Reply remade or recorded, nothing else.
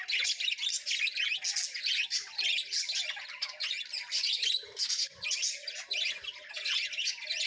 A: recorded